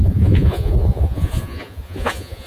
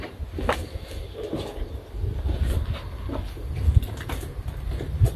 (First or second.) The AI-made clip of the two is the first